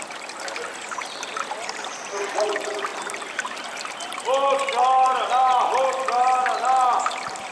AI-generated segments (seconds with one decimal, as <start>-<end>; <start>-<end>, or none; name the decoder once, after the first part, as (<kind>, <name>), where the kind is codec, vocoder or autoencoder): none